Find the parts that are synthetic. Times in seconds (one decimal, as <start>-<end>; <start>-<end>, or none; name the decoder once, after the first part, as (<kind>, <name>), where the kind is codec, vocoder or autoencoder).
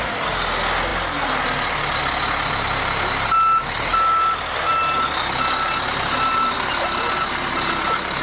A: none